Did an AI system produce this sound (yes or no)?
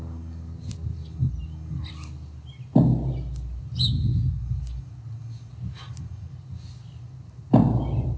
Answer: no